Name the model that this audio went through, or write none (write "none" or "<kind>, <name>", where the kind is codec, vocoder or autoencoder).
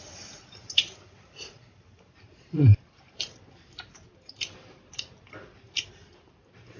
vocoder, BigVGAN v2